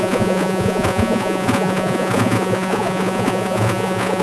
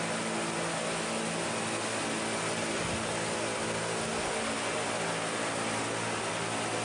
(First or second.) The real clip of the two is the second